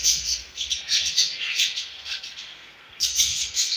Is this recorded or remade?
remade